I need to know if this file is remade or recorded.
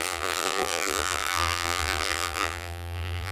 remade